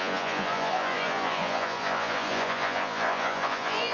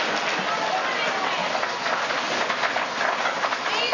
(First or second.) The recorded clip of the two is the second